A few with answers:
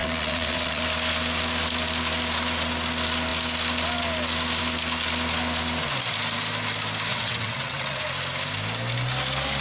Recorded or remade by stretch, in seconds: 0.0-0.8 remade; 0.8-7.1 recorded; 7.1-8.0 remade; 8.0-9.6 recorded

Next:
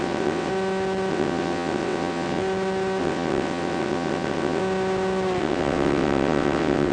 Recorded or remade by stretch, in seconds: 0.0-0.5 remade; 0.5-1.1 recorded; 1.1-2.4 remade; 2.4-3.0 recorded; 3.0-4.6 remade; 4.6-5.4 recorded; 5.4-6.9 remade

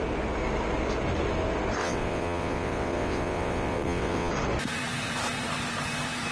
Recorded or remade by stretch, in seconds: 0.0-1.8 recorded; 1.8-4.3 remade; 4.3-6.3 recorded

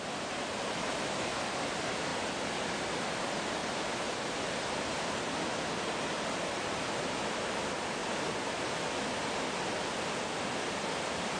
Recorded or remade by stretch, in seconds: 0.0-11.4 recorded

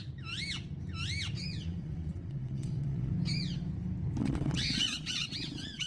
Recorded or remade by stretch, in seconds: 0.0-1.6 recorded; 1.6-3.1 remade; 3.1-4.2 recorded; 4.2-5.9 remade

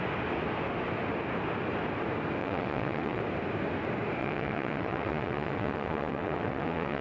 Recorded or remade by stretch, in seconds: 0.0-2.4 recorded; 2.4-3.2 remade; 3.2-4.2 recorded; 4.2-7.0 remade

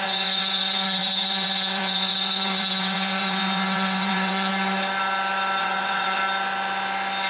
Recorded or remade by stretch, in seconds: 0.0-4.5 remade; 4.5-5.6 recorded; 5.6-6.2 remade; 6.2-7.3 recorded